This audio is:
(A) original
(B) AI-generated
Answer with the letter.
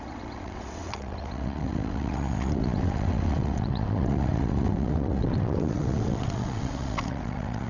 B